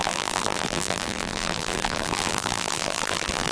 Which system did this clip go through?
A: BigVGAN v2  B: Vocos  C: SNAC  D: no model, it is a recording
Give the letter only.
A